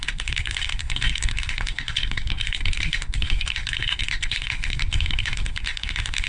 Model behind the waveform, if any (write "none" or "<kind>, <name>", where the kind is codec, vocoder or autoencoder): codec, SNAC